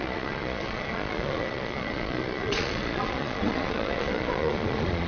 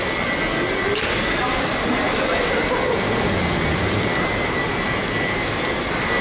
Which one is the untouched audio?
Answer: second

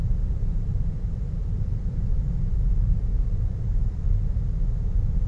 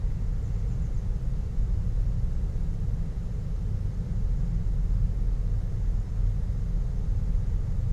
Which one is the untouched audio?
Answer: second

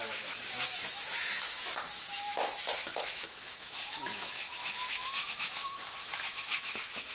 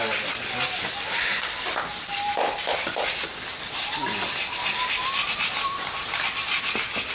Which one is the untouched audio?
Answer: second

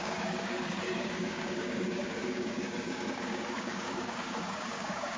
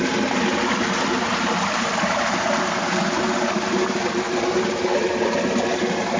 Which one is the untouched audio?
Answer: second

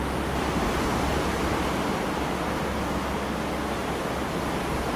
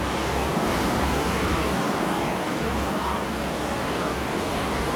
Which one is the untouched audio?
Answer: first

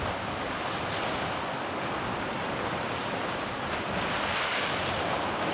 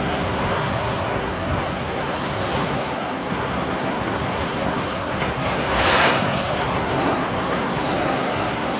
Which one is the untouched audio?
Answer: first